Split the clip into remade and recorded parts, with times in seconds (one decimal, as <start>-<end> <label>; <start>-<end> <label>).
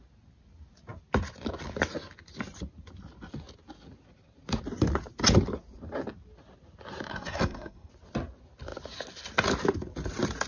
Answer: 0.0-7.1 recorded; 7.1-7.9 remade; 7.9-10.5 recorded